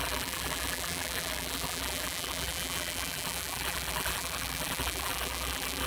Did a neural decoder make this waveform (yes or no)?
yes